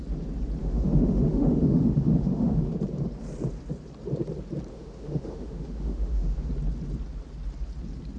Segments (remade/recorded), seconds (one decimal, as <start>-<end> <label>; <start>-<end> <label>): 0.0-0.6 recorded; 0.6-2.7 remade; 2.7-4.7 recorded; 4.7-6.5 remade; 6.5-8.2 recorded